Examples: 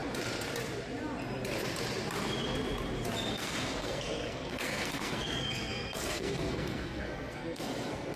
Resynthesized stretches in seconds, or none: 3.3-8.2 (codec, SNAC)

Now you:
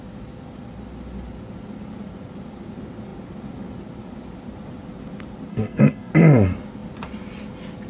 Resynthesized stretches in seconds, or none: 5.5-6.1 (codec, SNAC)

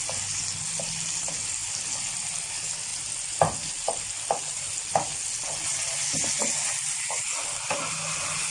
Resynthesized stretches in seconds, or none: none

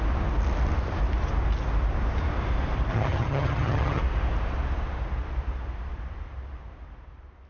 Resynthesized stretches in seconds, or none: 2.9-4.0 (vocoder, HiFi-GAN)

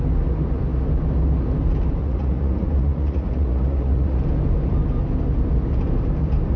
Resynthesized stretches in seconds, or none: 2.0-4.2 (vocoder, Vocos)

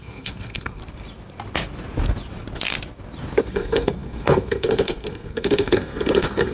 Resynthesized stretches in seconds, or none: 0.0-0.8 (codec, SNAC); 3.4-6.5

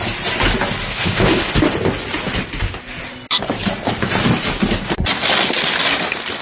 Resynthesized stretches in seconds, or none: 0.9-1.5 (codec, HILCodec)

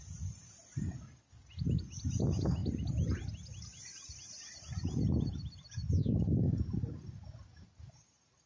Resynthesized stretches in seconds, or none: none